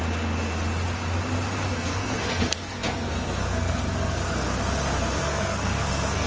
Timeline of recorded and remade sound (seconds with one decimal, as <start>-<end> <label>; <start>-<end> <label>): 0.0-1.7 recorded; 1.7-4.6 remade; 4.6-5.2 recorded; 5.2-6.3 remade